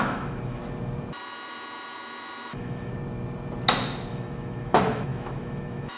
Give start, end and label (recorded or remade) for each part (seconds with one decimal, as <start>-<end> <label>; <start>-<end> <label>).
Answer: 0.0-0.6 remade; 0.6-2.5 recorded; 2.5-2.9 remade; 2.9-4.1 recorded; 4.1-6.0 remade